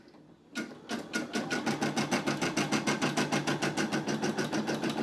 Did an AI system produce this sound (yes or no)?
no